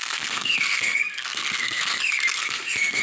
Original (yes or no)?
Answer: no